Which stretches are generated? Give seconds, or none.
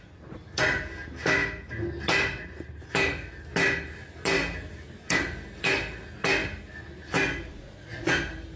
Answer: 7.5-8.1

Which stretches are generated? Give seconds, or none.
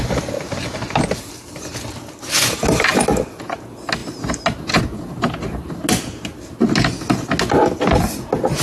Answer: none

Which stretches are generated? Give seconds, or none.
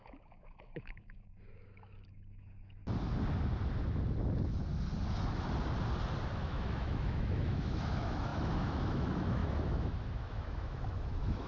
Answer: 0.0-2.8; 6.3-11.5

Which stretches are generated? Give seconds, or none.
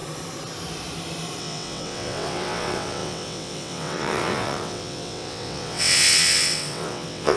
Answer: 1.4-7.4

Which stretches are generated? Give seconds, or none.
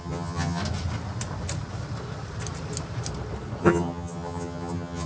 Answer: 0.0-0.6; 3.6-5.1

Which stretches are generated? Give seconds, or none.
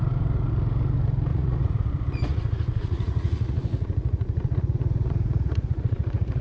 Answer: 1.3-1.9; 2.3-6.4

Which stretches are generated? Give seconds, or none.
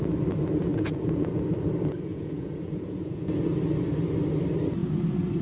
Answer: 0.7-1.4; 2.1-3.4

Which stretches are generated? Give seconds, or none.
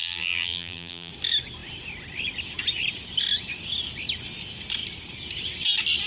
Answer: 0.0-1.1